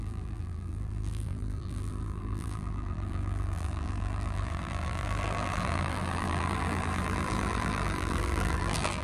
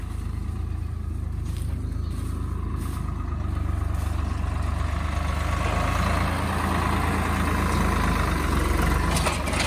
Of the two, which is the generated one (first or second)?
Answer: first